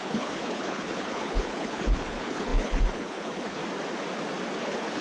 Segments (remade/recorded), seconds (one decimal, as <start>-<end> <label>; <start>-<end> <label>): 0.0-3.6 remade; 3.6-4.6 recorded; 4.6-5.0 remade